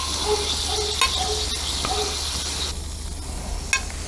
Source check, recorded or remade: recorded